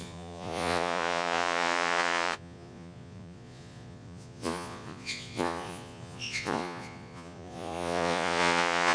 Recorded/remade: remade